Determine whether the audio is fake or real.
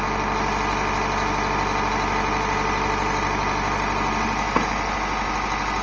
real